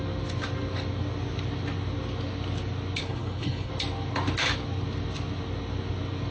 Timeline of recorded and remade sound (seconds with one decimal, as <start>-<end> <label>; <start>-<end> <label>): 0.0-3.0 recorded; 3.0-3.7 remade; 3.7-6.3 recorded